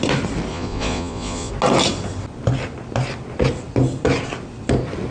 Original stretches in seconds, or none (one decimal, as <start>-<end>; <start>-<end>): 0.0-0.5; 1.5-5.1